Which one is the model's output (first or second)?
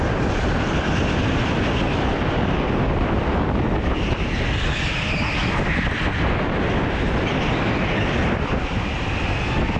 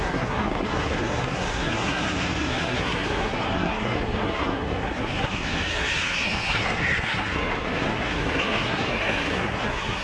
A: second